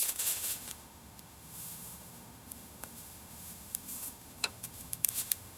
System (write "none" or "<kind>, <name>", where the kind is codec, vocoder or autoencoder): autoencoder, DAC-VAE